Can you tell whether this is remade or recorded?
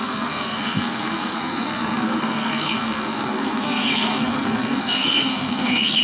remade